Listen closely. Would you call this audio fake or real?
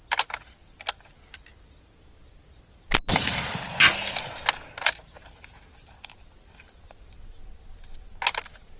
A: real